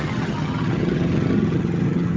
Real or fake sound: fake